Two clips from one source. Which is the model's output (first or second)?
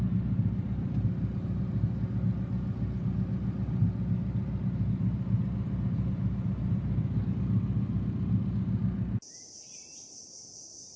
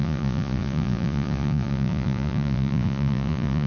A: second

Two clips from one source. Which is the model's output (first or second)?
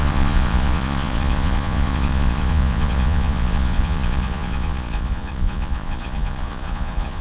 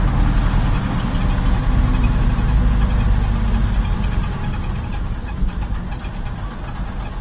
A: first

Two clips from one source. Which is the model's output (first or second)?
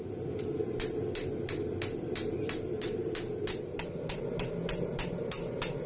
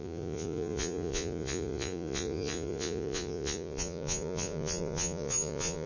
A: second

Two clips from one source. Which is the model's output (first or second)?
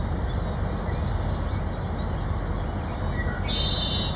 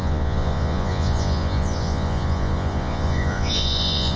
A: second